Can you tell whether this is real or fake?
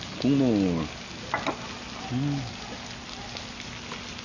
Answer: real